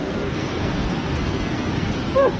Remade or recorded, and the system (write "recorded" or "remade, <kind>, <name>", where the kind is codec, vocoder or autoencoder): remade, codec, SNAC